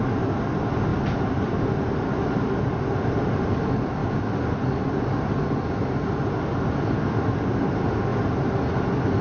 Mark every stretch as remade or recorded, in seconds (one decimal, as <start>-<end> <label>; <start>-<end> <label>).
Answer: 0.0-9.2 recorded